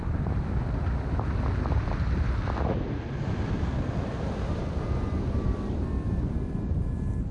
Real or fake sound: real